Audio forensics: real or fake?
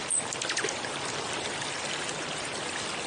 real